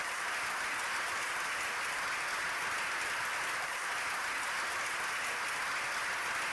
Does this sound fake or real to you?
real